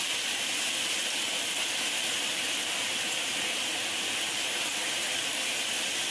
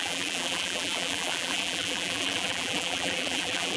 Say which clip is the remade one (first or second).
second